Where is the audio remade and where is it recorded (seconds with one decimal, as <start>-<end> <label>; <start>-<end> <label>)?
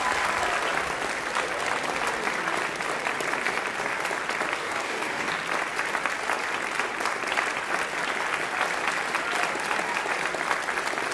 0.0-4.6 recorded; 4.6-5.3 remade; 5.3-11.1 recorded